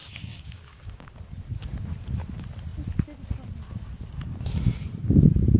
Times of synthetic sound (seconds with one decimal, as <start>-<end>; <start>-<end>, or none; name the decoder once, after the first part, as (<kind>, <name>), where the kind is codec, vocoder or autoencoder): 0.0-1.1 (codec, DAC)